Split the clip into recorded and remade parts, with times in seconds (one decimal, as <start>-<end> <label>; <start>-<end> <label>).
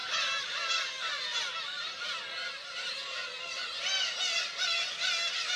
0.0-3.4 remade; 3.4-5.6 recorded